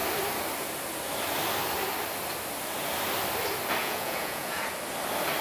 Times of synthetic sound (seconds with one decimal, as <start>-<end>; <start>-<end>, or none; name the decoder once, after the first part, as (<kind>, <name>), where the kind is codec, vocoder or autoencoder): 3.8-4.6 (vocoder, Vocos)